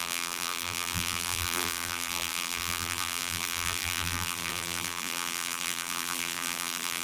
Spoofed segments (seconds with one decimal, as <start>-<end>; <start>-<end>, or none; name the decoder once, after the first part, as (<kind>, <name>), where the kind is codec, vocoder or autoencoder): 0.0-7.0 (vocoder, BigVGAN v2)